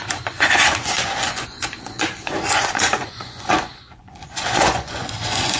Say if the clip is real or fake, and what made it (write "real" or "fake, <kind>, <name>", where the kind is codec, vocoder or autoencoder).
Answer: fake, vocoder, Vocos